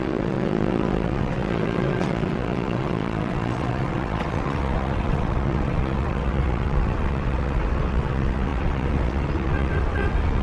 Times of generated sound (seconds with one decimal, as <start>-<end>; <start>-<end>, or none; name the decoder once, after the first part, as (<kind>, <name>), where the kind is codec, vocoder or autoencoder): 0.0-10.4 (vocoder, WaveNeXt)